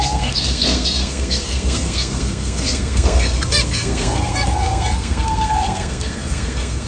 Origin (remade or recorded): remade